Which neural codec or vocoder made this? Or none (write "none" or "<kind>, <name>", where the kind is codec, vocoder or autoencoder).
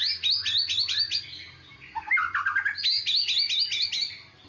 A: none